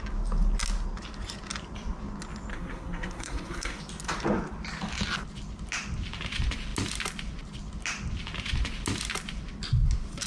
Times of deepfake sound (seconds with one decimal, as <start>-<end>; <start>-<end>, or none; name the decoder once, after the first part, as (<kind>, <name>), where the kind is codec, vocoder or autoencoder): 2.5-3.8 (codec, SNAC)